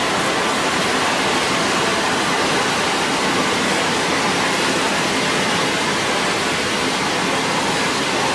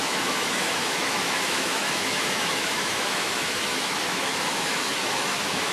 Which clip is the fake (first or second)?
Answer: second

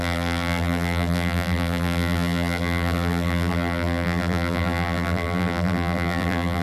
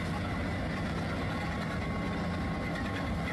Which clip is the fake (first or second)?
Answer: first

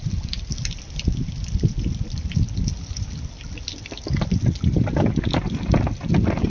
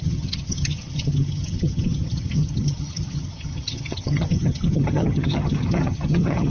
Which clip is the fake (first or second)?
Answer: second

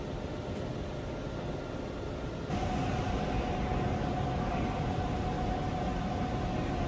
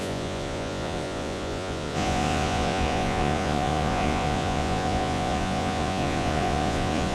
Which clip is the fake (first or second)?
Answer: second